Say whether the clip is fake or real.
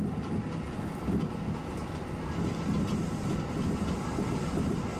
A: real